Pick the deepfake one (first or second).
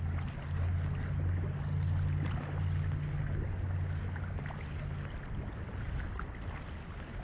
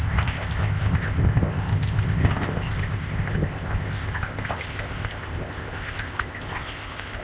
second